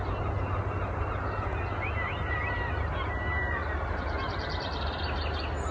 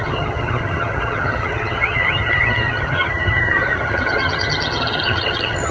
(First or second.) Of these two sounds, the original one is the first